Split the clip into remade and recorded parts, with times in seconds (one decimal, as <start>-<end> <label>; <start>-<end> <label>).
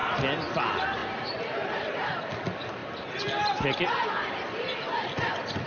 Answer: 0.0-1.0 recorded; 1.0-2.4 remade; 2.4-2.8 recorded; 2.8-5.3 remade; 5.3-5.7 recorded